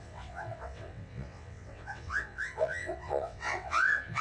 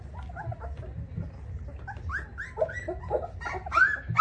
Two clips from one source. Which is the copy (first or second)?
first